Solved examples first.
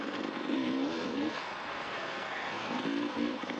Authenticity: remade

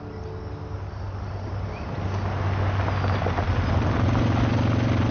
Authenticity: recorded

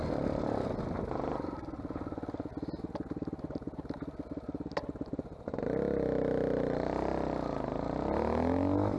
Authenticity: recorded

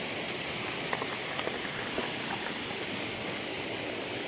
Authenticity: remade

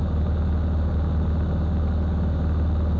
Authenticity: recorded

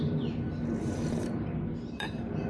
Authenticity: remade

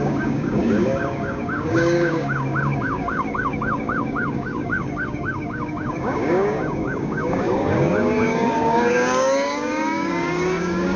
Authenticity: remade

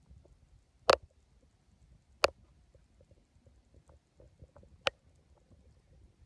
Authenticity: recorded